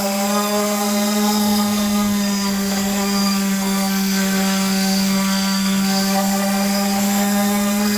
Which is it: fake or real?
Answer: fake